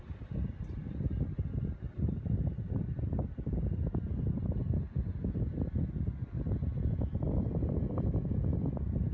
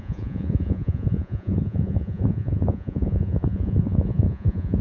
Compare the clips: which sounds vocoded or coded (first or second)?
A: second